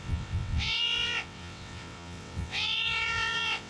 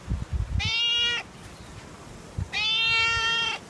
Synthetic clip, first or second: first